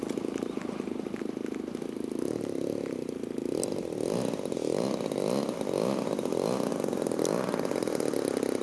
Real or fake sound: real